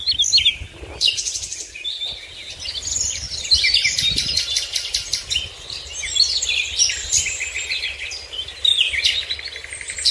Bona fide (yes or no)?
yes